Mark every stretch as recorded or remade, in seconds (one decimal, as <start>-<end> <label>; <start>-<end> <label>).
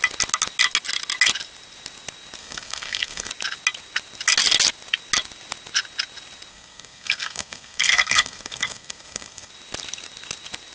0.0-2.4 recorded; 2.4-3.3 remade; 3.3-6.5 recorded; 6.5-9.5 remade; 9.5-10.7 recorded